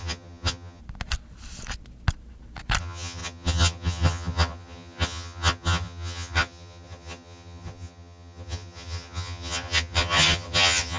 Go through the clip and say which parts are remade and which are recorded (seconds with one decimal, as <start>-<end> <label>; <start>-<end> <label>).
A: 0.0-0.8 remade; 0.8-2.8 recorded; 2.8-11.0 remade